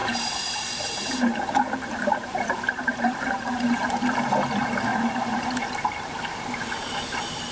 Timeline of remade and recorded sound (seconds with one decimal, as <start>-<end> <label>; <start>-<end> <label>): 0.0-4.2 remade; 4.2-4.9 recorded; 4.9-6.1 remade; 6.1-7.5 recorded